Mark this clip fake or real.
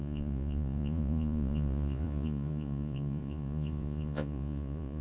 fake